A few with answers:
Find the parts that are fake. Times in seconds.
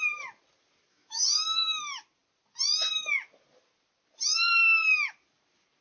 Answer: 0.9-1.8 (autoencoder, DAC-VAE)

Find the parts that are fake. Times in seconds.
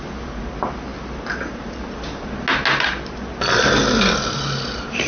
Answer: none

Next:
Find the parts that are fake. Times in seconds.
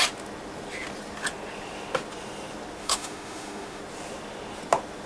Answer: 2.8-3.8 (autoencoder, DAC-VAE)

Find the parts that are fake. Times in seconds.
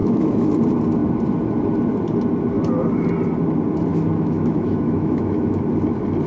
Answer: 0.0-0.5 (autoencoder, DAC-VAE); 3.9-5.6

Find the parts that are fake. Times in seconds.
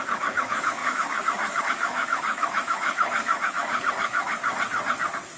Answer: 0.0-4.4 (autoencoder, DAC-VAE)